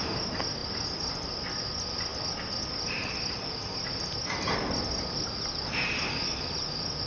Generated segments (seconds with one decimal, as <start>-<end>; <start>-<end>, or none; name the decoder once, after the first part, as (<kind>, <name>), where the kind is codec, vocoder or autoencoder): none